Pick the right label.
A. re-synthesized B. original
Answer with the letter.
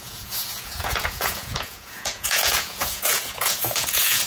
A